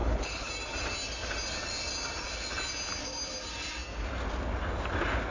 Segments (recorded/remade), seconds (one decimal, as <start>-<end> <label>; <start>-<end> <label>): 0.0-0.5 remade; 0.5-5.3 recorded